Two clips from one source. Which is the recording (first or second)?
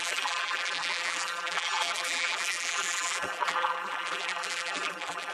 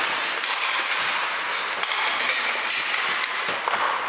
second